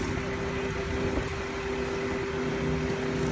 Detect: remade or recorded recorded